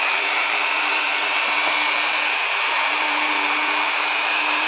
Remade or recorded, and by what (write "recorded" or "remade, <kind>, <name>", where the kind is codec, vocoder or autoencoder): remade, vocoder, BigVGAN v2